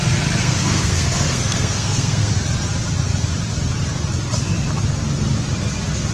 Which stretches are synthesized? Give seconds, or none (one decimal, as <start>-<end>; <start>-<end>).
0.4-2.3